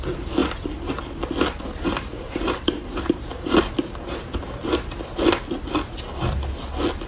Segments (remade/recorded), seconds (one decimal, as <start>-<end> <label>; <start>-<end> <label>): 0.0-7.1 recorded